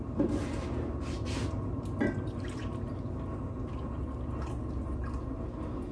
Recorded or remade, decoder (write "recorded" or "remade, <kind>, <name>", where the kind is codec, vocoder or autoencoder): recorded